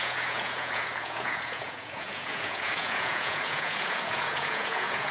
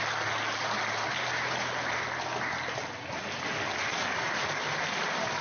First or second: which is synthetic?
first